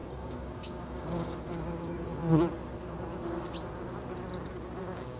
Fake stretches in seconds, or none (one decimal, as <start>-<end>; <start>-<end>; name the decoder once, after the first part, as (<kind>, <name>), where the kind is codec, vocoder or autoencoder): 0.0-2.2 (codec, DAC); 4.8-5.2